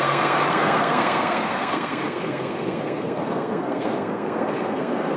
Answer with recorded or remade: remade